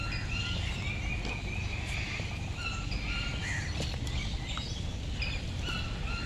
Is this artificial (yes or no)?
no